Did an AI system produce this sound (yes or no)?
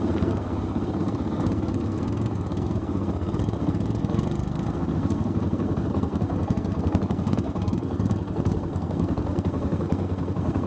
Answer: yes